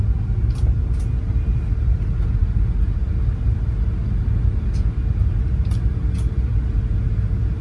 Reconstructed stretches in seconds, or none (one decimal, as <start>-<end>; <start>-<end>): none